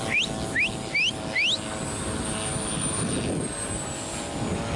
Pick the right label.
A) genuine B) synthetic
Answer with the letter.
A